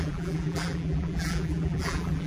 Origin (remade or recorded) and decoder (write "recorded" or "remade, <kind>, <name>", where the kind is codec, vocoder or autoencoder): remade, vocoder, BigVGAN v2